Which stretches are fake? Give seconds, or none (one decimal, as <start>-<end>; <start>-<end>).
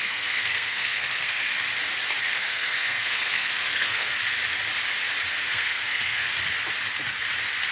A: 0.0-1.5; 2.2-4.1; 5.5-6.3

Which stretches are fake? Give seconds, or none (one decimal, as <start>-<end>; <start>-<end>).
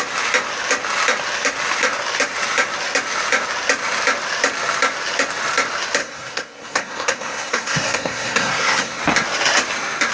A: 6.0-9.0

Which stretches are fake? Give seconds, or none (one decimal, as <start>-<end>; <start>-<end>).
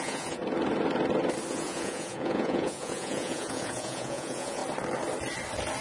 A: 0.0-0.4; 1.5-4.6